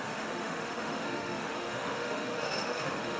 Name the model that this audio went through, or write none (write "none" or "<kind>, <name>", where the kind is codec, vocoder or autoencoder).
autoencoder, DAC-VAE